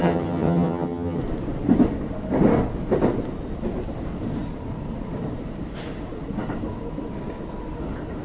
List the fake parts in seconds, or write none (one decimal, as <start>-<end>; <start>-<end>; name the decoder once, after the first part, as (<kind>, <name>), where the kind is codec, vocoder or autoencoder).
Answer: 0.0-1.2 (vocoder, HiFi-GAN)